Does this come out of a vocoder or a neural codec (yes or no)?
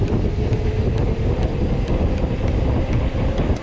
no